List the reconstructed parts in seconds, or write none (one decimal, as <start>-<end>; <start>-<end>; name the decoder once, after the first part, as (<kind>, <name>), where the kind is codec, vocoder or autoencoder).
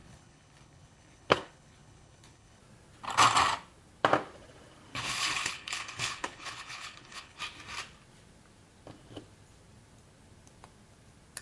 0.0-2.6 (codec, HILCodec); 4.9-7.4